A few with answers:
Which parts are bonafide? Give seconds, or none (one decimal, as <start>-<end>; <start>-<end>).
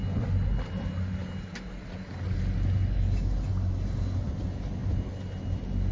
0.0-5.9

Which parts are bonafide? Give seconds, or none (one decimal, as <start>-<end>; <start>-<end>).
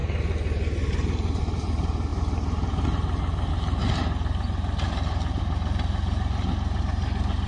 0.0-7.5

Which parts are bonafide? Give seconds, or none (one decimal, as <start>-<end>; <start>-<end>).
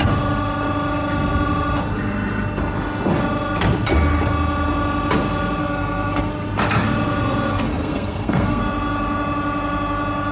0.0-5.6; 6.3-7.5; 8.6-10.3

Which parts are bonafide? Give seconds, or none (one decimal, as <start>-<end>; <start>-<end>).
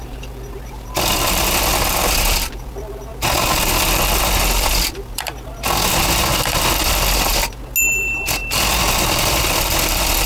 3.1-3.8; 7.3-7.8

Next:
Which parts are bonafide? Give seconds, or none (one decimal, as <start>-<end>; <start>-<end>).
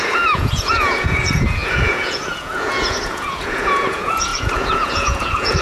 none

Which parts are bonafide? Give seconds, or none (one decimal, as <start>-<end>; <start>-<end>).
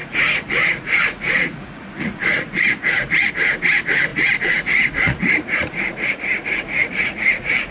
3.3-4.1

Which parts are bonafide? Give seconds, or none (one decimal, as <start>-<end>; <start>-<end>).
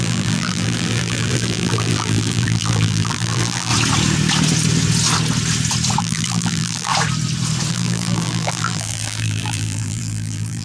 3.7-6.0; 6.9-7.7